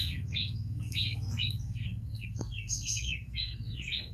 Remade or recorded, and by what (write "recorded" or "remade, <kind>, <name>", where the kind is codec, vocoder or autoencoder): remade, codec, SNAC